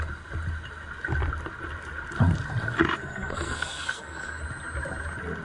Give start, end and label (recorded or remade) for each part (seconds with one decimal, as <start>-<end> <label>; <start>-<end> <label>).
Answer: 0.0-3.0 recorded; 3.0-4.4 remade; 4.4-5.4 recorded